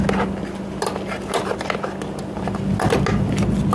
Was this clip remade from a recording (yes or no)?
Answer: no